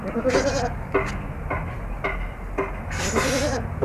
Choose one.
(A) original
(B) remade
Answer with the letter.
A